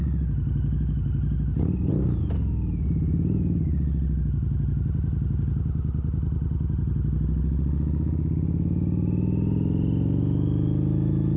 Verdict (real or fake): real